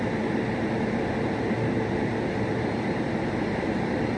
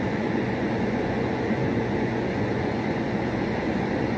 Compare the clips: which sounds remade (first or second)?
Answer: second